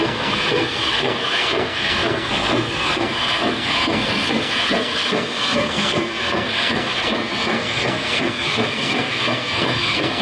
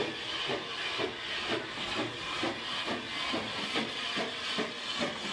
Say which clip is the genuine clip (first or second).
second